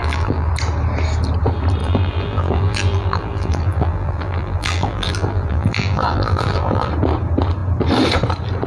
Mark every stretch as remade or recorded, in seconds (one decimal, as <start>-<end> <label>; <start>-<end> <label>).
0.0-0.5 remade; 0.5-1.8 recorded; 1.8-6.9 remade; 6.9-8.7 recorded

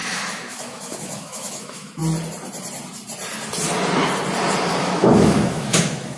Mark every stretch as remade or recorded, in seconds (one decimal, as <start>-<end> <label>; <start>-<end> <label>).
0.0-2.0 remade; 2.0-4.8 recorded; 4.8-6.2 remade

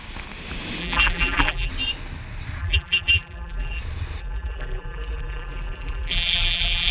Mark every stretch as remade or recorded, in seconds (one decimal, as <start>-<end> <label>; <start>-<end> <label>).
0.0-0.8 recorded; 0.8-1.7 remade; 1.7-2.6 recorded; 2.6-3.8 remade; 3.8-4.2 recorded; 4.2-6.9 remade